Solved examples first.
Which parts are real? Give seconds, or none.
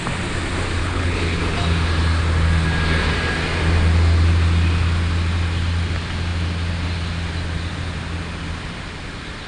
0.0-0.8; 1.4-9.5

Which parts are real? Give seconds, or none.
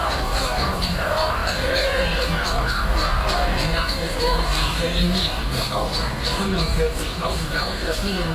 none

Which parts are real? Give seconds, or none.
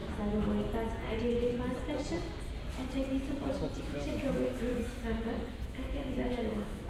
0.0-3.8; 4.7-5.5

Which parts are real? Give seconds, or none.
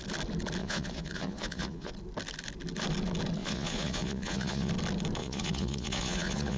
0.0-0.6; 1.9-3.4; 4.7-5.2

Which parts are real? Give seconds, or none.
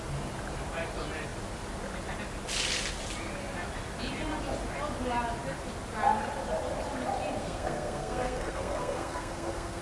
0.0-7.4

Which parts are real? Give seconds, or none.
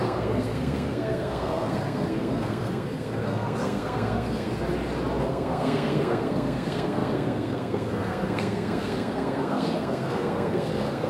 4.5-5.2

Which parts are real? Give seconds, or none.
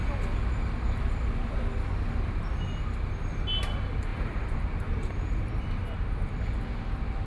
0.0-4.1; 6.1-7.3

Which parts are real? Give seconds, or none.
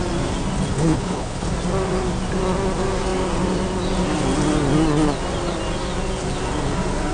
0.0-0.7; 1.5-7.1